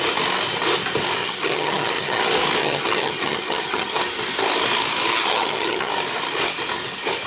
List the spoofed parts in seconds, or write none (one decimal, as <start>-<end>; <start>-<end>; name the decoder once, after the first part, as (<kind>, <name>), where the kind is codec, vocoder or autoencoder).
1.2-2.2 (vocoder, HiFi-GAN); 2.6-4.0; 5.1-5.9